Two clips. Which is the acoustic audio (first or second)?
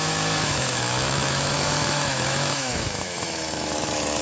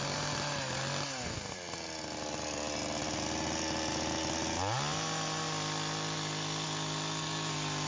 second